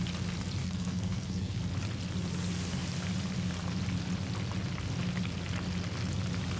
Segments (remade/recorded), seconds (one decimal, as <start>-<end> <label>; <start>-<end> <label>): 0.0-0.6 recorded; 0.6-1.6 remade; 1.6-6.6 recorded